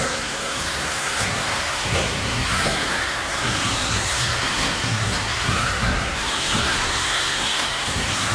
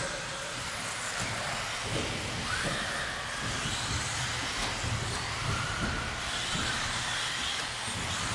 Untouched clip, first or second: second